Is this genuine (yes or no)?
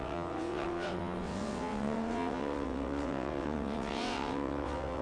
no